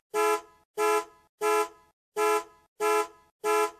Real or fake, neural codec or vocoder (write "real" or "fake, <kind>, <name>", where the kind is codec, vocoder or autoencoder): real